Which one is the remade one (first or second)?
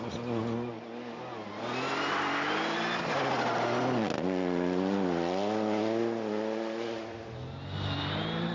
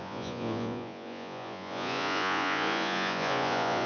second